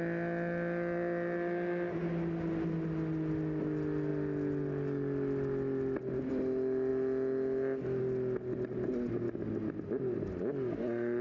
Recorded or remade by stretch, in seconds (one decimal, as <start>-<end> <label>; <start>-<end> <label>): 0.0-11.2 recorded